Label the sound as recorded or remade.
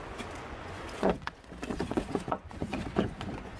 remade